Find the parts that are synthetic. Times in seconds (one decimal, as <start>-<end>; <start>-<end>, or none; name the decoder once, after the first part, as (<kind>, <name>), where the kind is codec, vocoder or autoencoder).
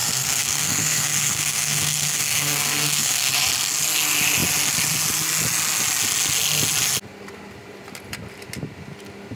0.0-3.3 (codec, SNAC)